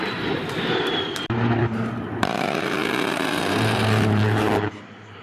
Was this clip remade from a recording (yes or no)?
yes